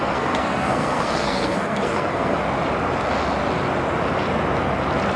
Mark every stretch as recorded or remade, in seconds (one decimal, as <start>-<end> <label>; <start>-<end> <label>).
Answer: 0.0-2.4 remade; 2.4-5.2 recorded